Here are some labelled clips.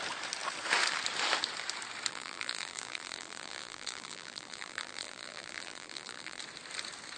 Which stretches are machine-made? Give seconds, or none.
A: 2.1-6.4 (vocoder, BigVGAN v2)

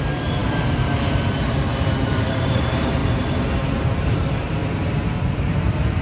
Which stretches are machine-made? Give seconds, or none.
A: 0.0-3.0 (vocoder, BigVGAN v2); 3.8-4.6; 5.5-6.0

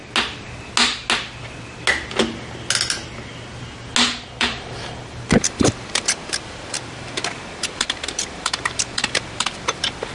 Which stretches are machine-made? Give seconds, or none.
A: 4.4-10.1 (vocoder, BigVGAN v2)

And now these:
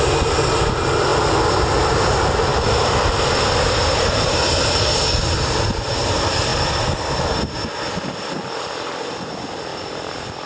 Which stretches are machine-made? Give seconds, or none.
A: 2.5-5.4 (vocoder, BigVGAN v2); 9.7-10.5

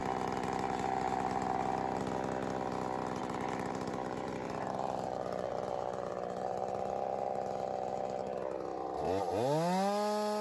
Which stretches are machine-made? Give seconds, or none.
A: 3.2-6.1 (vocoder, BigVGAN v2)

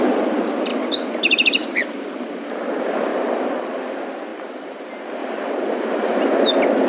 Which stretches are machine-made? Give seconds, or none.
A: 0.7-2.5 (vocoder, BigVGAN v2); 3.1-3.8; 4.3-4.8; 5.2-6.2